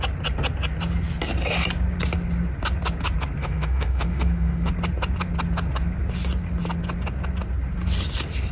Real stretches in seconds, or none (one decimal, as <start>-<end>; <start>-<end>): 0.0-3.4; 4.7-8.5